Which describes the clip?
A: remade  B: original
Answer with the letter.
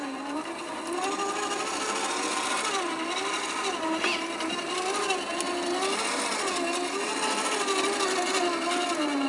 B